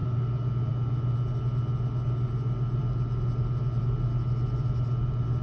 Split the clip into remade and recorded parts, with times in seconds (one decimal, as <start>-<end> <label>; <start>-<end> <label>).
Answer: 0.0-5.4 recorded